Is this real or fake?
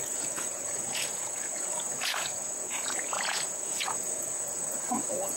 fake